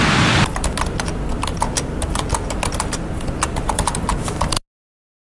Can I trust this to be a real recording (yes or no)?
yes